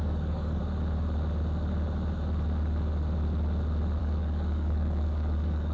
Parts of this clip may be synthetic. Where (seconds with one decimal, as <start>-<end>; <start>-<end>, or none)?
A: 0.0-0.6; 4.0-5.7